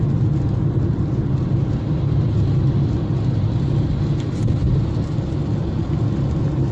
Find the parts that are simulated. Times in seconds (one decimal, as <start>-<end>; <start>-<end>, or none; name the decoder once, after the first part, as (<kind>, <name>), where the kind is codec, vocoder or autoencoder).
none